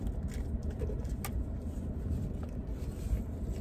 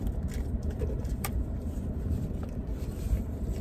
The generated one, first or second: second